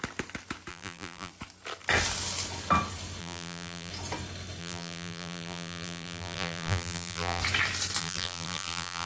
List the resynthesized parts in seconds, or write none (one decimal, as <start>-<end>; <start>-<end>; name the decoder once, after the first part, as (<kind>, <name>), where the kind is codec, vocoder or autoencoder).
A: 0.7-1.3 (vocoder, BigVGAN v2); 3.2-3.9; 4.6-7.4; 8.0-9.1